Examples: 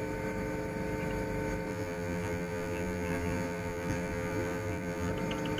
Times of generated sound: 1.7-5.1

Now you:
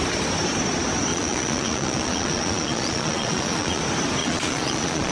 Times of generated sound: 1.1-3.8; 4.2-5.1